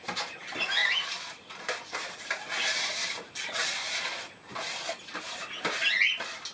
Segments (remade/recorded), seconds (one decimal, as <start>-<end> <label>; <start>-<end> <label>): 0.0-0.8 recorded; 0.8-4.1 remade; 4.1-6.5 recorded